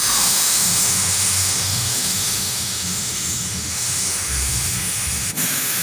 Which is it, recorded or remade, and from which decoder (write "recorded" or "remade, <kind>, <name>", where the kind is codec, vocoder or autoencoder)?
remade, autoencoder, DAC-VAE